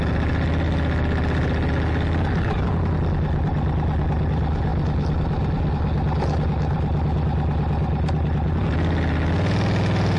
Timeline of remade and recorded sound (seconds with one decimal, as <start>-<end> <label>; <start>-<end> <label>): 0.0-10.2 recorded